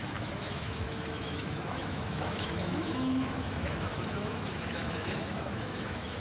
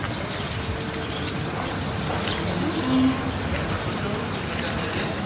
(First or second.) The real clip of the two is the second